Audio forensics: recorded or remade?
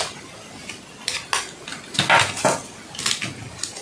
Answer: recorded